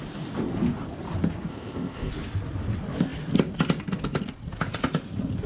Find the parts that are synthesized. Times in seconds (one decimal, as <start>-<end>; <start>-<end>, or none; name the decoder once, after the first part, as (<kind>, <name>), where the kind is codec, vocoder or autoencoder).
1.5-2.1 (codec, ZipCodec)

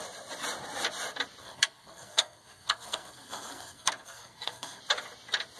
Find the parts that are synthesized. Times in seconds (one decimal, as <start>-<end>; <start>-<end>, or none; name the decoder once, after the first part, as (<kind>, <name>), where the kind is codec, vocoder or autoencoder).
1.4-4.8 (codec, SNAC)

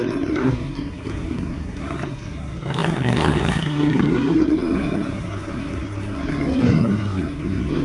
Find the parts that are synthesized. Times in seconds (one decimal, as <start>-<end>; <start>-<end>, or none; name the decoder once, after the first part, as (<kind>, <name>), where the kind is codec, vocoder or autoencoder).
0.0-7.8 (codec, SNAC)